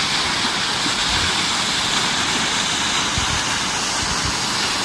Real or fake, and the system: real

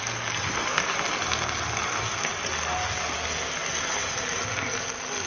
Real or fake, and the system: real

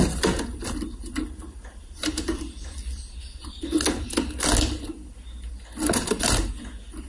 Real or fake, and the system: real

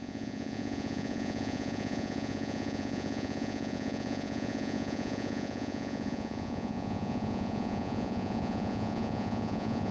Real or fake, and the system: fake, vocoder, Vocos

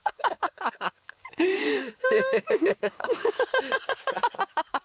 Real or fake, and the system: fake, codec, DAC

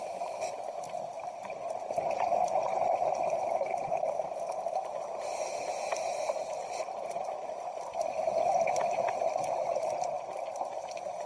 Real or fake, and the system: real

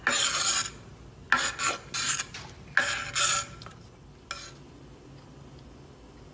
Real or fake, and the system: real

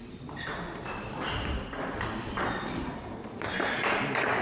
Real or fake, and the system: real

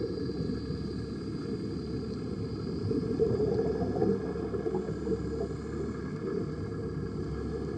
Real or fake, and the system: real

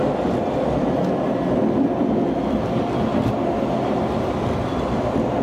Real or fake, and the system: real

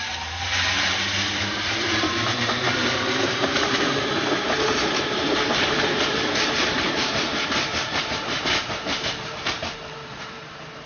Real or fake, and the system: fake, vocoder, BigVGAN v2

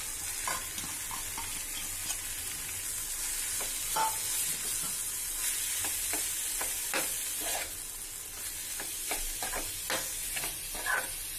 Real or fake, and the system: real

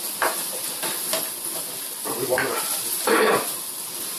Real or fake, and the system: real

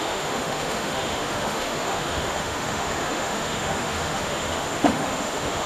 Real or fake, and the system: fake, autoencoder, DAC-VAE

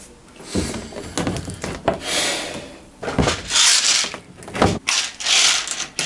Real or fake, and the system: real